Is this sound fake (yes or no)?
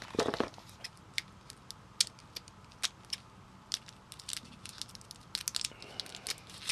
no